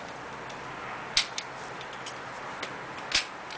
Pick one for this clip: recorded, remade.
recorded